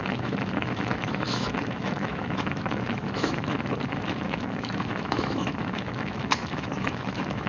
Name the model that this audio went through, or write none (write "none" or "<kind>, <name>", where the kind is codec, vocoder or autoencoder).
autoencoder, DAC-VAE